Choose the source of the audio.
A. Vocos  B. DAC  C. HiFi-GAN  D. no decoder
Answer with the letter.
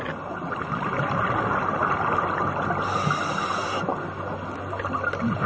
D